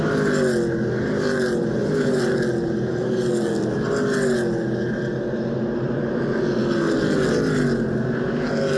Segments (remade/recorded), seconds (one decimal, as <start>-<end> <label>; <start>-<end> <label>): 0.0-8.8 recorded